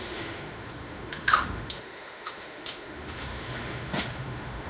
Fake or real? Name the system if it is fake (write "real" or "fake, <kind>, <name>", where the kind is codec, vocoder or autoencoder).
fake, autoencoder, DAC-VAE